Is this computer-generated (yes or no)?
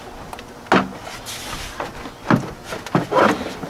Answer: no